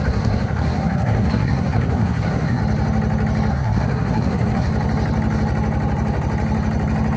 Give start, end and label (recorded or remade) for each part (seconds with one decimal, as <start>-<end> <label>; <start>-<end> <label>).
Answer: 0.0-2.6 remade; 2.6-3.5 recorded; 3.5-4.7 remade; 4.7-7.2 recorded